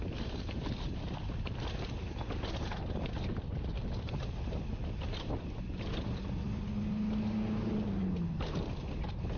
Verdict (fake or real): real